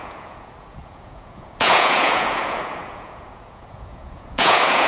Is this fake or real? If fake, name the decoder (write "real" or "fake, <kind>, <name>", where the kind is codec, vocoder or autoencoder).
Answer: fake, vocoder, Vocos